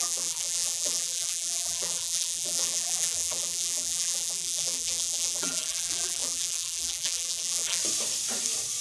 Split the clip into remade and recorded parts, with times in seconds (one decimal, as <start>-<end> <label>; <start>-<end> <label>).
0.0-7.8 remade; 7.8-8.8 recorded